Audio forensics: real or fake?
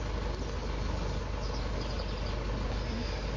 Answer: real